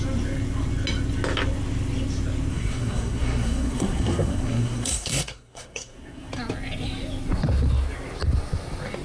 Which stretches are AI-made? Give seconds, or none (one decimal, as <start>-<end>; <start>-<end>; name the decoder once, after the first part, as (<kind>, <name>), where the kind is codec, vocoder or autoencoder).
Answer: 2.5-6.3 (codec, SNAC)